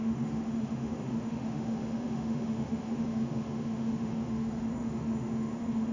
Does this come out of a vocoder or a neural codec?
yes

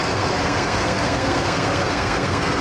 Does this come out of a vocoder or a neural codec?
yes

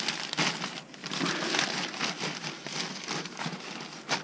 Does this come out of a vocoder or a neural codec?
no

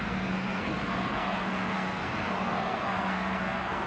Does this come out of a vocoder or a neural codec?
yes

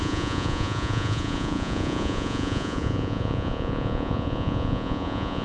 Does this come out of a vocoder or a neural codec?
yes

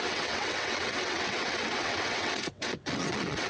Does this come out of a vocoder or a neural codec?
yes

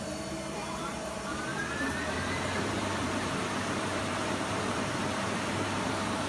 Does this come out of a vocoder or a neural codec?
yes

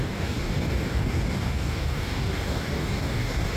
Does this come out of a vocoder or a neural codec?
yes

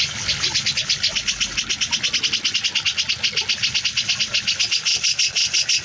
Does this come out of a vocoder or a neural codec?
no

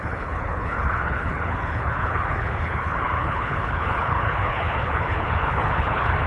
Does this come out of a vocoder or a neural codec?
yes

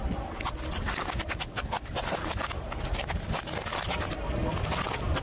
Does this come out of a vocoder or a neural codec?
no